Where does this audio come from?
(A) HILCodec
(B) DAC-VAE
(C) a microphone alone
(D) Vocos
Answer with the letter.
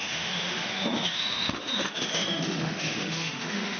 B